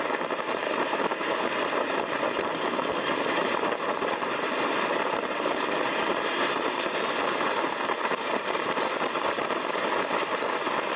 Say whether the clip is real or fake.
fake